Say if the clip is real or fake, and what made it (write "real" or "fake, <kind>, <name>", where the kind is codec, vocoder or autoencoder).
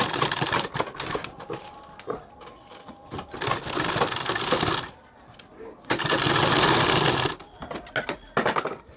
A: real